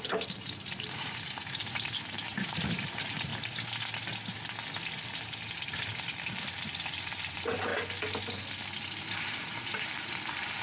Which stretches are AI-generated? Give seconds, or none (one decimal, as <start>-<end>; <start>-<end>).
0.0-3.3; 7.1-7.7; 9.0-10.6